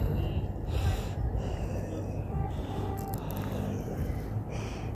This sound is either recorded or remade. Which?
recorded